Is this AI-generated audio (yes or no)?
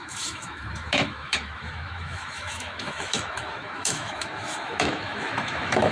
yes